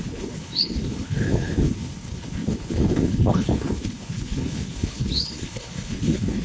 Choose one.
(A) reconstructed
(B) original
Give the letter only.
A